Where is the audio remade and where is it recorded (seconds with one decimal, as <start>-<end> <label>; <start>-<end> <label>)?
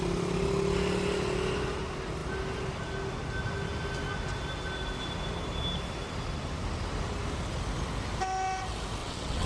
0.0-9.0 recorded; 9.0-9.5 remade